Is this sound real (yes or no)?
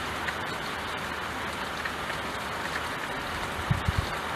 yes